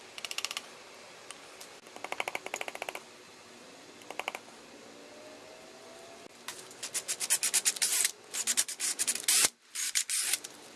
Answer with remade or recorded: recorded